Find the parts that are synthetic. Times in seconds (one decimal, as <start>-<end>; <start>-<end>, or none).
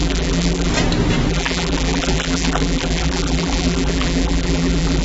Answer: 0.0-0.7; 1.3-5.0